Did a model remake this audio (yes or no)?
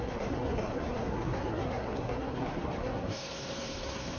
yes